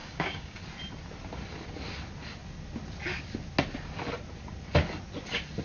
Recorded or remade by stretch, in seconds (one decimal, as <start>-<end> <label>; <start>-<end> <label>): 0.0-0.6 remade; 0.6-5.6 recorded